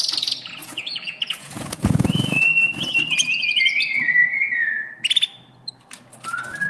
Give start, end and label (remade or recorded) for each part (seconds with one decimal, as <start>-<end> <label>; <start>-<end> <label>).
0.0-0.6 recorded; 0.6-2.4 remade; 2.4-4.2 recorded; 4.2-4.9 remade; 4.9-6.7 recorded

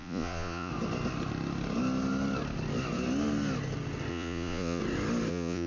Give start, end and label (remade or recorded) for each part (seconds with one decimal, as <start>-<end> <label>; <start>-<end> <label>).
0.0-0.7 remade; 0.7-4.1 recorded; 4.1-4.8 remade; 4.8-5.3 recorded; 5.3-5.7 remade

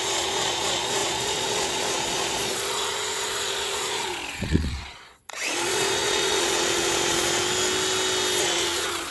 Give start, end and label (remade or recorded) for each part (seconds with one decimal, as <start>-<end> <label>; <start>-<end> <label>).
0.0-7.4 remade; 7.4-8.4 recorded; 8.4-9.1 remade

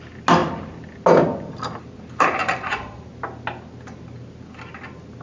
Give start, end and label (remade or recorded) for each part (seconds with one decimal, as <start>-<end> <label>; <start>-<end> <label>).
0.0-2.4 recorded; 2.4-3.0 remade; 3.0-5.2 recorded

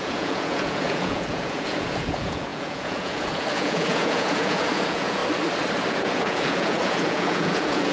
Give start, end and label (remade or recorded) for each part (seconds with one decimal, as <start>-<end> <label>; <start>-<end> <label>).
0.0-5.2 remade; 5.2-5.9 recorded; 5.9-7.9 remade

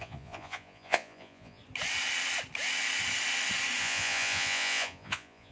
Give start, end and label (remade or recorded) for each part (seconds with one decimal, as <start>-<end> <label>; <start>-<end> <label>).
0.0-1.6 remade; 1.6-3.8 recorded; 3.8-5.5 remade